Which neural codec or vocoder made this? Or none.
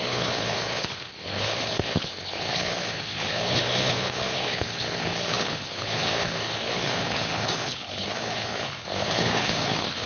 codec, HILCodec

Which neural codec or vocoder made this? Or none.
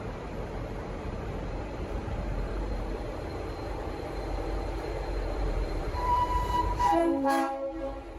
vocoder, BigVGAN v2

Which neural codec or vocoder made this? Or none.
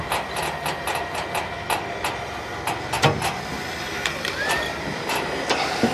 none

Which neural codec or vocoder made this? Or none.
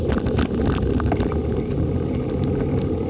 none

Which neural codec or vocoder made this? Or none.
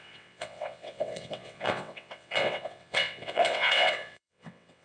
vocoder, WaveNeXt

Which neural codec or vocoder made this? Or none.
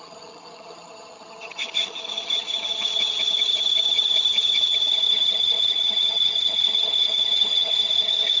vocoder, HiFi-GAN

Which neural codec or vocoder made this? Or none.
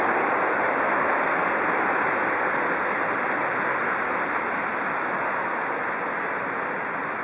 none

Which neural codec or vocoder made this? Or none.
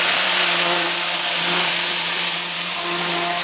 vocoder, BigVGAN v2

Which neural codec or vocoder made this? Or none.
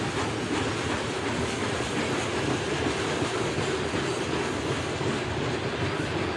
none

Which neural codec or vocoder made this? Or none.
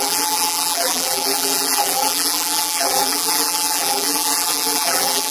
vocoder, BigVGAN v2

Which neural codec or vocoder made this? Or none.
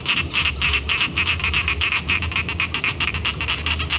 none